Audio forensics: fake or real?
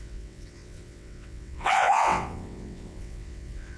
fake